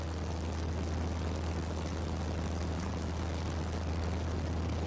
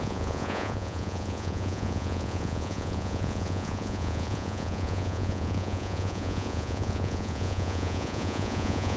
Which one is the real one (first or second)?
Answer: first